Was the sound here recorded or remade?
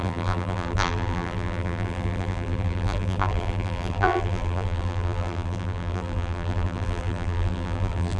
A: remade